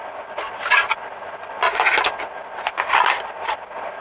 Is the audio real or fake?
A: real